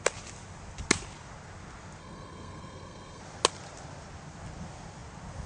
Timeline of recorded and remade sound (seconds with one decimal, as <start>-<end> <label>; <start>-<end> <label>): 0.0-2.0 recorded; 2.0-3.2 remade; 3.2-5.5 recorded